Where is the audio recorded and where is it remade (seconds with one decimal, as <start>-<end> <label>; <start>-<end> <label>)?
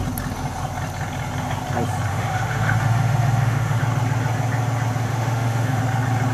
0.0-2.1 recorded; 2.1-3.8 remade; 3.8-5.1 recorded; 5.1-5.8 remade; 5.8-6.3 recorded